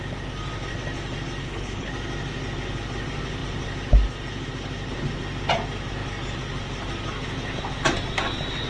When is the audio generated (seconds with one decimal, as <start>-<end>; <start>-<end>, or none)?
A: 1.4-1.9